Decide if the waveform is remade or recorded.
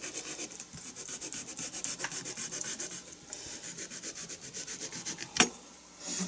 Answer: recorded